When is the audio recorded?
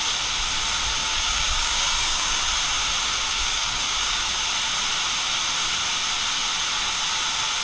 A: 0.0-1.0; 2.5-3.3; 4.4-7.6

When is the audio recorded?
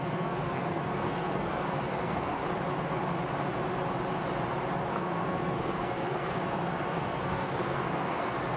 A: 2.4-4.9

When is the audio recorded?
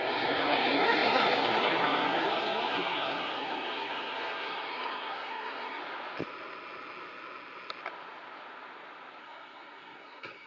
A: 5.8-9.2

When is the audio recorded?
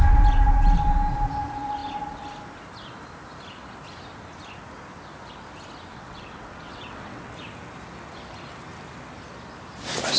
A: 0.0-5.9; 7.3-10.2